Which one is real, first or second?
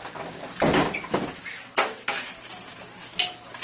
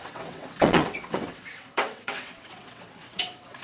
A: first